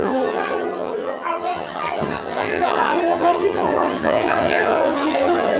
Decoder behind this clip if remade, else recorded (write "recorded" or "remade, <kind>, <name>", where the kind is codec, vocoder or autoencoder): remade, vocoder, HiFi-GAN